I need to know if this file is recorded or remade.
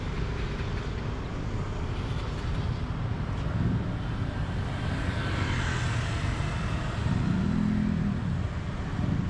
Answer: recorded